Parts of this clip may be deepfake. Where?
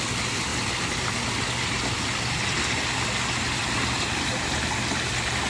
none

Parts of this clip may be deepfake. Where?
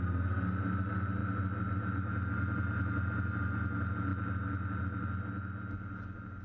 none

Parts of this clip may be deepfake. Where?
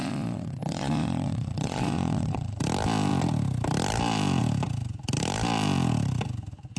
0.0-2.6 (vocoder, Vocos)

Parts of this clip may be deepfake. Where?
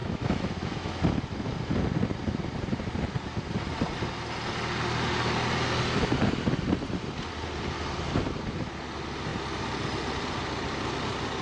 0.0-0.9 (autoencoder, DAC-VAE)